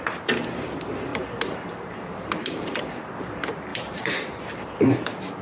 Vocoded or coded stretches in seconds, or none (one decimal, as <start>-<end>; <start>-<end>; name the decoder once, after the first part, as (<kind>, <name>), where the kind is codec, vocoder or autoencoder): 1.1-2.8 (vocoder, BigVGAN v2); 3.7-4.4